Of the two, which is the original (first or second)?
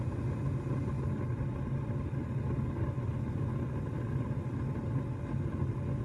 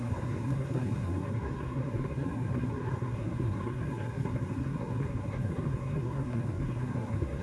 first